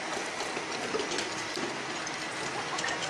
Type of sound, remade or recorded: recorded